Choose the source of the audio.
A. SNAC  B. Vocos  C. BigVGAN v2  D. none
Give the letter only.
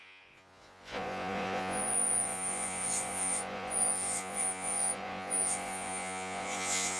B